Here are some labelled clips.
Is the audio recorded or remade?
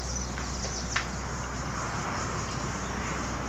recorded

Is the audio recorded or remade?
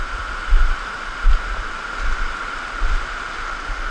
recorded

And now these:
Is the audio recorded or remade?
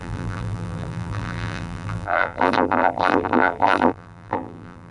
remade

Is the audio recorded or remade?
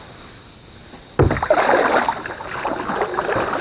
recorded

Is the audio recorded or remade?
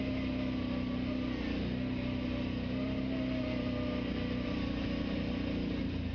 recorded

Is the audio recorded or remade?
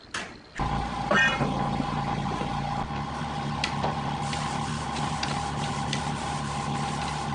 recorded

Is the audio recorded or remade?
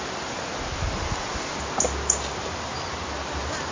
recorded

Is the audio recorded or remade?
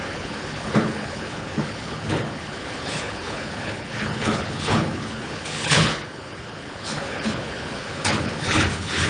remade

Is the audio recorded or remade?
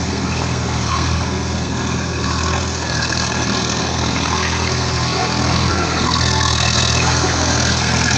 remade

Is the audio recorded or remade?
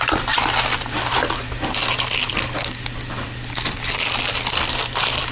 recorded